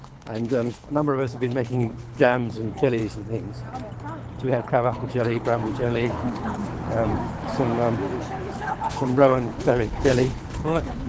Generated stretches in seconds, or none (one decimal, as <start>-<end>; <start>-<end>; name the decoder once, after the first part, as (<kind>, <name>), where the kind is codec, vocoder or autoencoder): 0.0-3.0 (codec, HILCodec); 4.4-6.6; 8.2-11.1